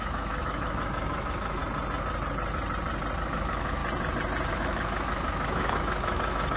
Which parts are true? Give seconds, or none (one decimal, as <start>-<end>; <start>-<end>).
1.6-3.3; 3.8-4.5